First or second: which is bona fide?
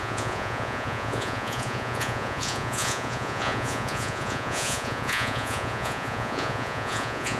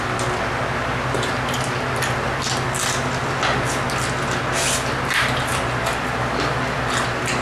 second